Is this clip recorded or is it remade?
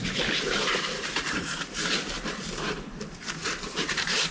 remade